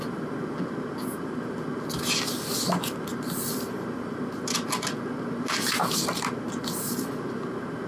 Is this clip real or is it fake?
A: real